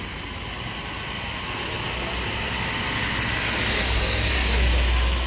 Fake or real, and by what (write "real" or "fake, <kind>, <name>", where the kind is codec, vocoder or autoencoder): real